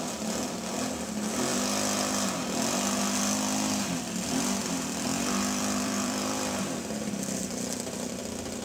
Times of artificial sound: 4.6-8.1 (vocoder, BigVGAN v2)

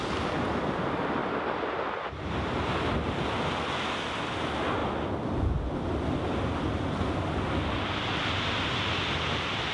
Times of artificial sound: none

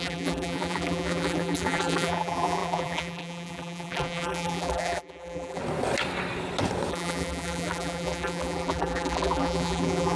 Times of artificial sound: 0.0-5.6 (vocoder, BigVGAN v2); 6.9-10.2

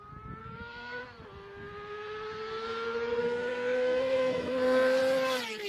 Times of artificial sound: 0.4-1.0 (codec, SNAC); 3.1-5.0

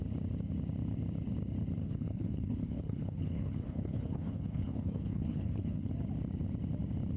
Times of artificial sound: 1.8-5.9 (codec, HILCodec)

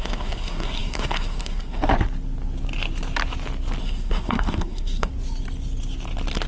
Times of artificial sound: 0.0-1.9 (codec, SNAC); 3.8-5.1

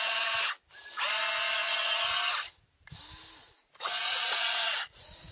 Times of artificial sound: 4.0-5.3 (vocoder, Vocos)